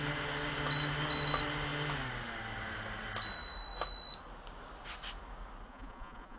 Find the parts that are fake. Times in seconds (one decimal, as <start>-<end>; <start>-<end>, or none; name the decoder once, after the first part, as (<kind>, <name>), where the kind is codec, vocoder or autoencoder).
5.7-6.4 (vocoder, Vocos)